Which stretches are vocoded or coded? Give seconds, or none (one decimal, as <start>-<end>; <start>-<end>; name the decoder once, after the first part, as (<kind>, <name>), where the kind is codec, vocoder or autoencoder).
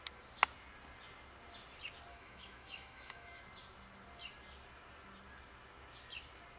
2.1-3.4 (autoencoder, DAC-VAE)